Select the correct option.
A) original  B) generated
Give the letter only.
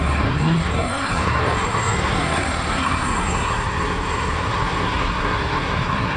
B